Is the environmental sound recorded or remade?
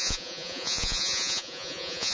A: remade